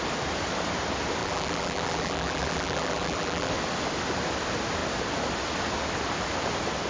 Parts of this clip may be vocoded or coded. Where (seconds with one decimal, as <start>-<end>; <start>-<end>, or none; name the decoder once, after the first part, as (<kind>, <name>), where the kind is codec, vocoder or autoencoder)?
1.2-3.5 (vocoder, BigVGAN v2)